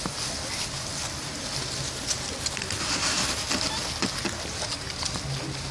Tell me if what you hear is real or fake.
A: real